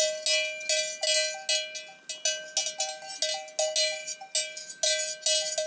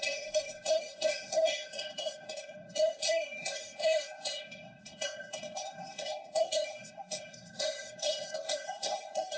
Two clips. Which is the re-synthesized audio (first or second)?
second